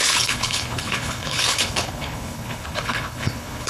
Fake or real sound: fake